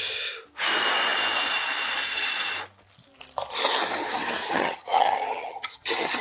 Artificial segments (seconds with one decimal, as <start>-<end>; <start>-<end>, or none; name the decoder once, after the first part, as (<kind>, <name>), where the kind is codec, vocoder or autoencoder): 4.0-6.2 (vocoder, HiFi-GAN)